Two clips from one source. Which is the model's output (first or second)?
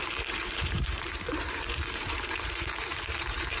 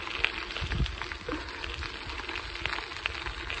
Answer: first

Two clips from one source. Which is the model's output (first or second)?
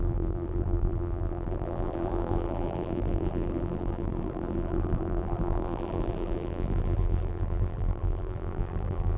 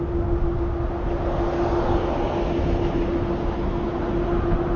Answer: first